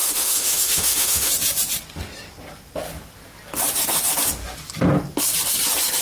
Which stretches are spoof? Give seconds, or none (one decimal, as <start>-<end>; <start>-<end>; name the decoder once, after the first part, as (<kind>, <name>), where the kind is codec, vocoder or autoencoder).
0.0-1.3 (autoencoder, DAC-VAE)